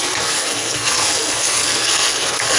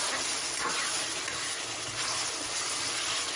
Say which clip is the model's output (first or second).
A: first